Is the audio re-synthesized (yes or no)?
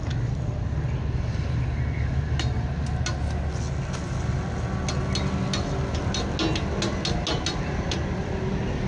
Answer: no